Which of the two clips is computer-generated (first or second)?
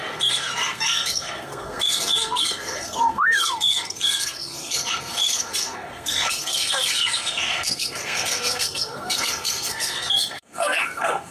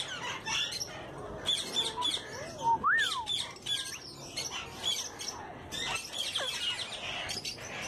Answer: first